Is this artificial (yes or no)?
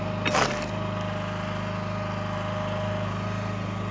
no